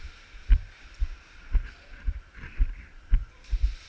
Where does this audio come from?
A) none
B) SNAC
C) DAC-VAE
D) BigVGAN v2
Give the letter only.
D